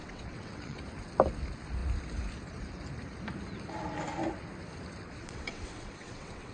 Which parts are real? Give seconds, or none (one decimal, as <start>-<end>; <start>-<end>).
0.8-5.2